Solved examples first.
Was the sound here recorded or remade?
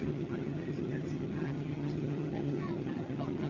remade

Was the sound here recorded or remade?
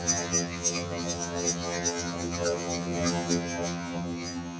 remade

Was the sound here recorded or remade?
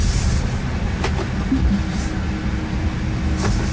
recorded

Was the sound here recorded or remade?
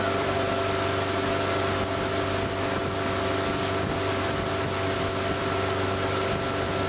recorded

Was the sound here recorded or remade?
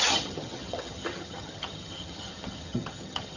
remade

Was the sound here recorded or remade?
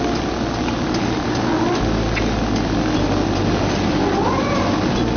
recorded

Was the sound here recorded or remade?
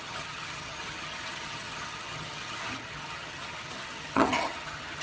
remade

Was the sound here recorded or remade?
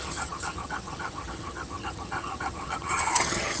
remade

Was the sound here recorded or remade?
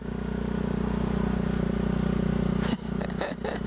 recorded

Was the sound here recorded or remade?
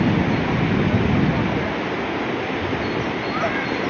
recorded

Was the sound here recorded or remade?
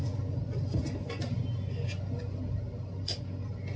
recorded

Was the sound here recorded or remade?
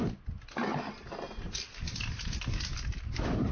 recorded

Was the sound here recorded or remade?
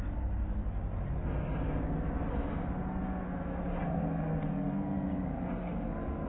recorded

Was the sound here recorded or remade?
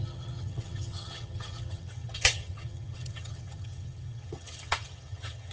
remade